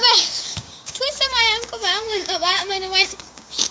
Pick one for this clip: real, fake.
fake